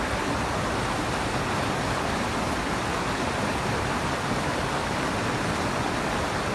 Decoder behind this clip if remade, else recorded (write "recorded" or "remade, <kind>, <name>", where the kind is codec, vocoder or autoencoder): recorded